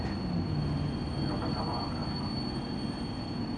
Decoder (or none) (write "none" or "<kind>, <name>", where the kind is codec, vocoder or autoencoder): none